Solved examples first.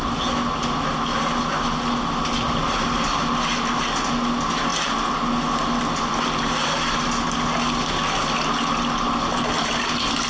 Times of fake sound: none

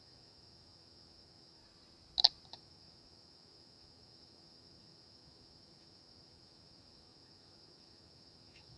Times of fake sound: 0.0-1.6; 2.5-8.8